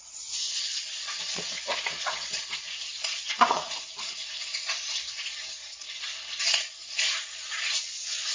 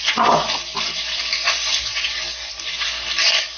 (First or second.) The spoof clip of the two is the first